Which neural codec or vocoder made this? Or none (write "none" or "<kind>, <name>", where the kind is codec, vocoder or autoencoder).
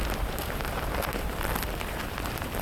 none